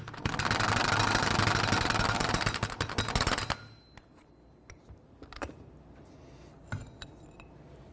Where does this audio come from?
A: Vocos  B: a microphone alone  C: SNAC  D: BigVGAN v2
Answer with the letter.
B